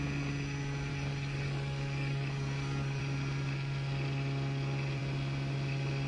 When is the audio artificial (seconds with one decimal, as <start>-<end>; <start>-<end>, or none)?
0.9-3.0